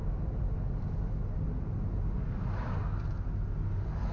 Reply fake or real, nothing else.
real